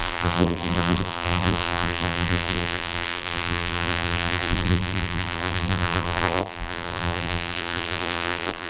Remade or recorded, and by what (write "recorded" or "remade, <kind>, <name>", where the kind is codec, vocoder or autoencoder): remade, vocoder, BigVGAN v2